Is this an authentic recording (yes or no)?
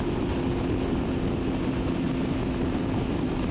yes